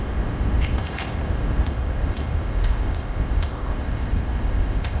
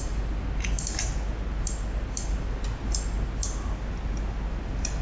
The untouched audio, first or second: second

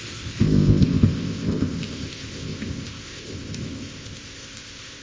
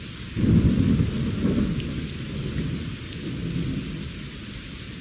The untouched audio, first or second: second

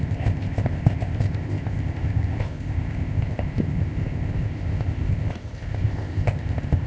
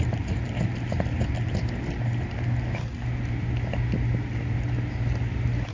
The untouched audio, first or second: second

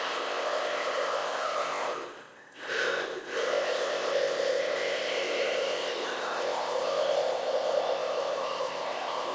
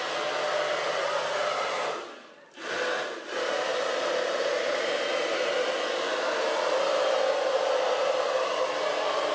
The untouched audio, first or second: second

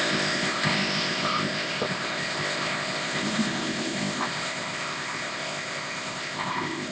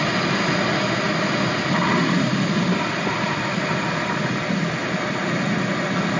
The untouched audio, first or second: second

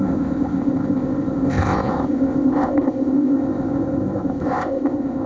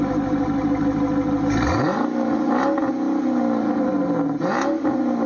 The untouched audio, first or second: second